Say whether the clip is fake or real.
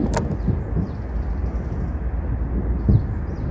real